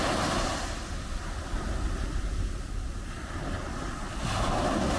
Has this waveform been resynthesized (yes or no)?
no